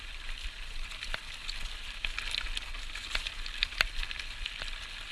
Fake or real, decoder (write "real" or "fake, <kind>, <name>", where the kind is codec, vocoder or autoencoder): real